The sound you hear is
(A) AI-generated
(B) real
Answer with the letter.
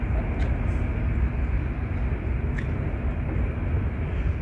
B